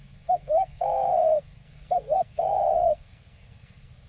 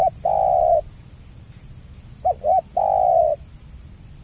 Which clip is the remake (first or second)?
first